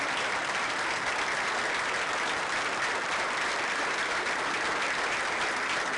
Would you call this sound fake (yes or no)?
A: no